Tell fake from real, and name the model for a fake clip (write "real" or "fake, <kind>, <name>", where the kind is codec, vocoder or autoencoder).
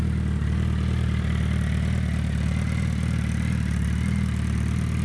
real